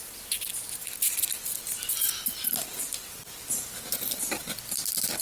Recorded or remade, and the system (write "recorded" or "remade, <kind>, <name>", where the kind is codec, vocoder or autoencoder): recorded